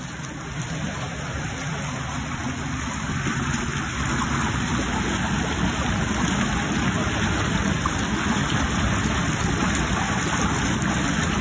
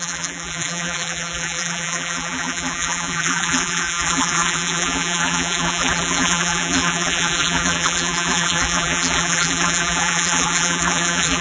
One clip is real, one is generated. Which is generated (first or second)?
second